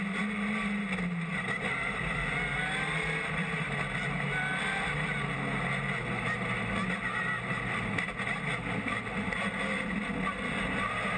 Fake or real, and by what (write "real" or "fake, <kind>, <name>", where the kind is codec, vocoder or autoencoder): real